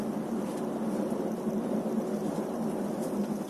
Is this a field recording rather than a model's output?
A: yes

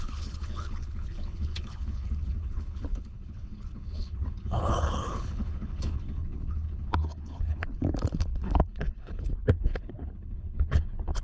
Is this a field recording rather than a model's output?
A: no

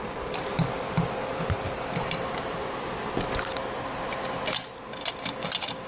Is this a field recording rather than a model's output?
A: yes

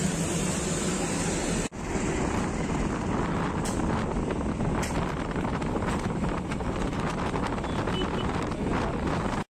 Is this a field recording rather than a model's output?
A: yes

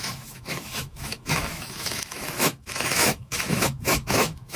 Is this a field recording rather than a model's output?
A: no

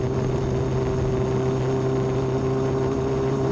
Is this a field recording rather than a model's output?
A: yes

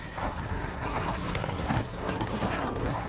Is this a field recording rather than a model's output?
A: no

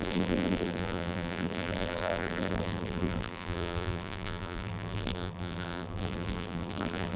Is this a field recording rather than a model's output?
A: no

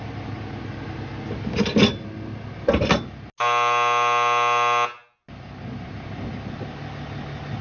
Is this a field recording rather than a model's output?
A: yes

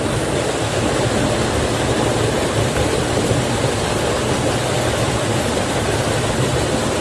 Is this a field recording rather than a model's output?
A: yes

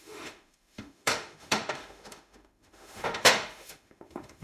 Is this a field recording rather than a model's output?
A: no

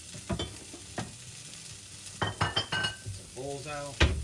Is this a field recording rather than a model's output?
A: yes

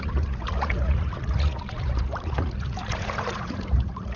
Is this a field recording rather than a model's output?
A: no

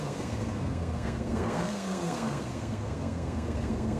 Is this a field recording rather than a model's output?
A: no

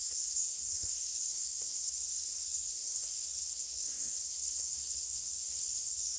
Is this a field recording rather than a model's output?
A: no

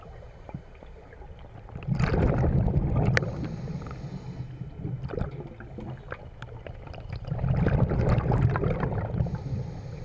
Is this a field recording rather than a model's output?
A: yes